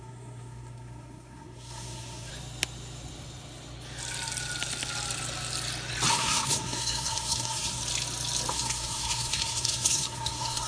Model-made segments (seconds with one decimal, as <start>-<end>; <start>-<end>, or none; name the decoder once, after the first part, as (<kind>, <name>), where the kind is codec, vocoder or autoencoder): 0.0-2.3 (codec, SNAC); 6.1-7.8; 8.5-10.7